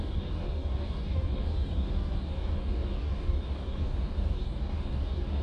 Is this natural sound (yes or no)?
no